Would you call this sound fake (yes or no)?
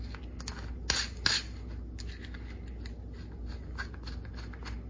no